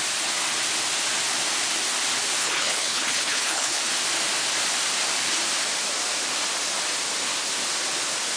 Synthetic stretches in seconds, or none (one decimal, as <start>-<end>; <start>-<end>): 2.4-3.8